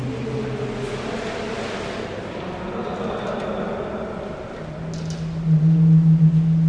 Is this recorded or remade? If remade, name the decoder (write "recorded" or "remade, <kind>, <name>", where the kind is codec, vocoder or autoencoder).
recorded